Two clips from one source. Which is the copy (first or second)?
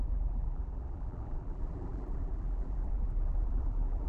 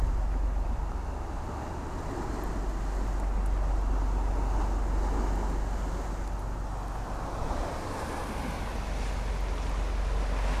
first